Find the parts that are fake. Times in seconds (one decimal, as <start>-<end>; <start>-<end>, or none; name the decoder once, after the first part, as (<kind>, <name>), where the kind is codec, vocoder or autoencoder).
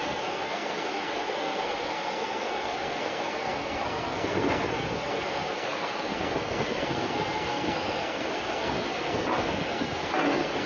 0.0-10.7 (codec, SNAC)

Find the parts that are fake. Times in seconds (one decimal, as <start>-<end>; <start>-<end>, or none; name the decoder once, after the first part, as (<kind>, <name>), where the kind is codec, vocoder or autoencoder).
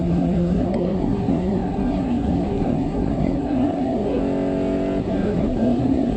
0.0-4.2 (codec, SNAC); 5.0-6.2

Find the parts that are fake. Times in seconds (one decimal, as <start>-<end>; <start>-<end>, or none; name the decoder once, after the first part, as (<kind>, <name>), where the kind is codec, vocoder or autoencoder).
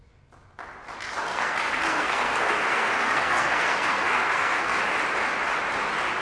1.3-4.8 (codec, SNAC)